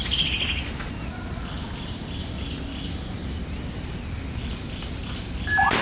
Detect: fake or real real